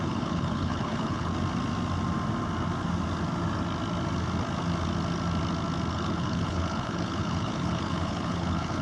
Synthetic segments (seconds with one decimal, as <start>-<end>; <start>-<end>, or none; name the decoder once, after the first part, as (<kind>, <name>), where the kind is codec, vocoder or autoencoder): 0.0-1.3 (codec, HILCodec); 5.9-8.8